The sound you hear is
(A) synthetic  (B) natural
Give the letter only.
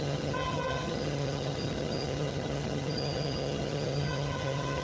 A